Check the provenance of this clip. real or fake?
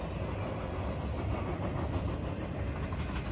real